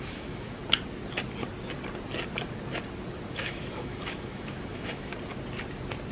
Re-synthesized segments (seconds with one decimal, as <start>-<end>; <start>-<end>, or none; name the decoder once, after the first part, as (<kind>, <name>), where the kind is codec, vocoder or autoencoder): 0.0-0.6 (autoencoder, DAC-VAE); 3.3-5.1